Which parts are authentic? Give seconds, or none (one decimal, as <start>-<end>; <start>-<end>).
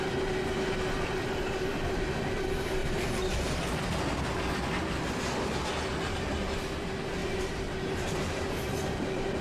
0.0-2.8; 3.9-7.2; 8.5-9.4